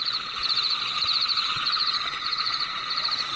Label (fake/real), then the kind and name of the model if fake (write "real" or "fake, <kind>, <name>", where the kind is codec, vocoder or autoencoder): fake, vocoder, Vocos